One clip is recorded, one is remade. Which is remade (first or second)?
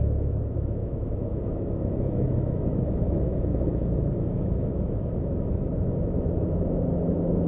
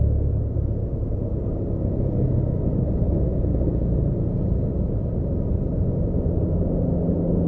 first